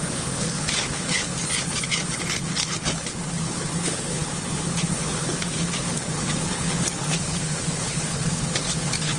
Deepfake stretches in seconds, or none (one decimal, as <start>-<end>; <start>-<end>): 0.0-9.2